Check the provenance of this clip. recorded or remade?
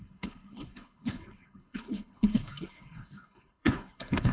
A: remade